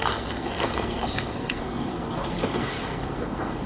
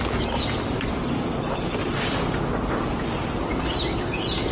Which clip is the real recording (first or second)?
second